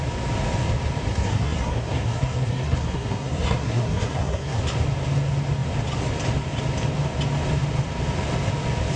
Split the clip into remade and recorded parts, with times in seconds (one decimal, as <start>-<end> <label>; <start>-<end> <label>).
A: 0.0-1.1 recorded; 1.1-4.6 remade; 4.6-9.0 recorded